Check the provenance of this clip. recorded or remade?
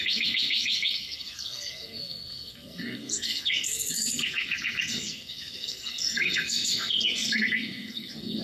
remade